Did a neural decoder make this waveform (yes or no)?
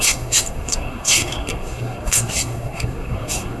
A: yes